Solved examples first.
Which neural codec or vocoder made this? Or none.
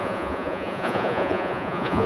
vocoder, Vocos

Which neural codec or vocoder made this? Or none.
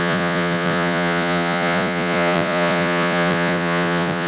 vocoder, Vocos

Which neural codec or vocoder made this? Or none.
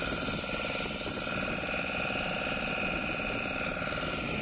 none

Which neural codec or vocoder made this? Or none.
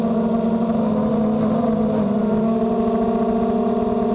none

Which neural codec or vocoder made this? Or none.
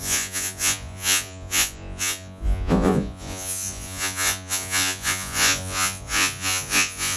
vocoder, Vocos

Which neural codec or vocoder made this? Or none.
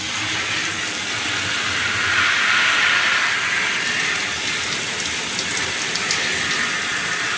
none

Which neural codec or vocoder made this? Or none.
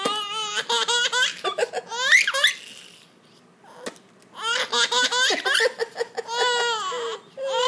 none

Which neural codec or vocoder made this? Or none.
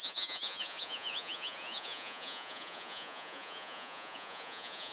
vocoder, Vocos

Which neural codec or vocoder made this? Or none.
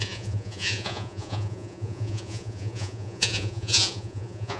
vocoder, Vocos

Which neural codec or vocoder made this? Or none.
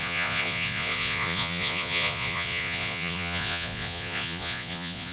vocoder, Vocos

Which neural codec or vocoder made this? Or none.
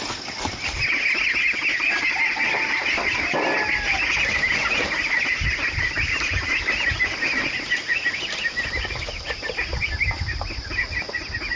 none